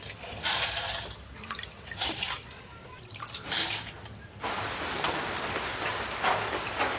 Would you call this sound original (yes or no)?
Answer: yes